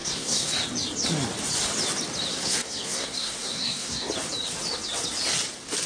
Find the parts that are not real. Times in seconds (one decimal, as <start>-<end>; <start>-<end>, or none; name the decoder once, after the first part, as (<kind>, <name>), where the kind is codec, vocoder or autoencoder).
0.0-0.5 (codec, SNAC); 2.3-4.1